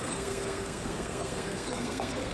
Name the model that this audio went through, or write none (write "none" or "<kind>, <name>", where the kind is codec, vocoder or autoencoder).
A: codec, SNAC